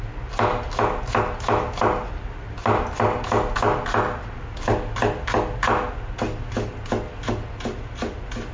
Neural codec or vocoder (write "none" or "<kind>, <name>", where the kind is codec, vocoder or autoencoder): none